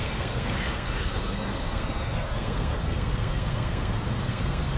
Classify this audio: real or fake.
fake